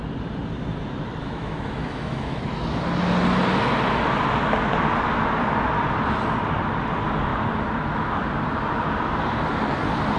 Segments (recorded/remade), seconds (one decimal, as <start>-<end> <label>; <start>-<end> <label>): 0.0-1.2 recorded; 1.2-2.4 remade; 2.4-10.2 recorded